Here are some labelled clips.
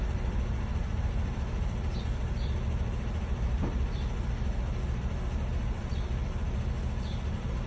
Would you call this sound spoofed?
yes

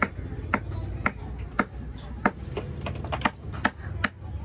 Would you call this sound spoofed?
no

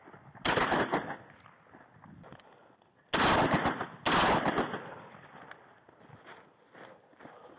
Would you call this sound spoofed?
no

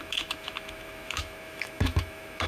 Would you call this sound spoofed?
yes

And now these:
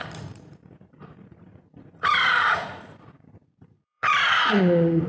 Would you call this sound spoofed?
yes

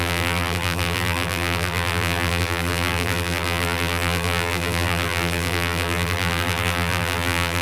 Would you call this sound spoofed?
yes